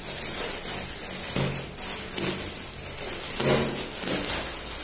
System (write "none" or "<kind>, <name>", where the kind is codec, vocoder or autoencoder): none